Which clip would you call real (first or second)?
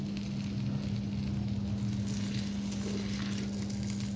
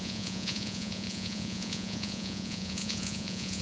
first